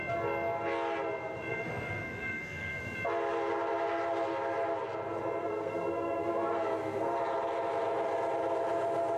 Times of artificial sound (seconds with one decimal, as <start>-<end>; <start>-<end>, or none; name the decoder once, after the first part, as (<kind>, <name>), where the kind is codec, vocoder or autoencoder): 1.5-2.8 (codec, SNAC); 5.4-7.2

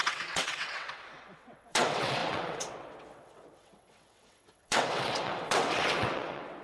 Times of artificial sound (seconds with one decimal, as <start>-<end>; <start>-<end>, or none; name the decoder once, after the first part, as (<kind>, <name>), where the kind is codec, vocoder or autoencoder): 0.0-6.6 (vocoder, WaveNeXt)

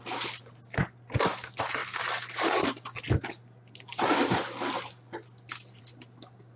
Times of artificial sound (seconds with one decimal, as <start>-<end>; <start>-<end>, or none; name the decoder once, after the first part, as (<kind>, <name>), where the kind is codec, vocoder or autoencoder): none

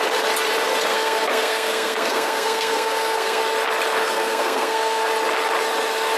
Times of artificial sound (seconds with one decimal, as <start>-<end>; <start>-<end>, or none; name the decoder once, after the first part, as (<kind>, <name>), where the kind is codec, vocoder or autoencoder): 0.9-3.4 (codec, SNAC); 3.9-5.1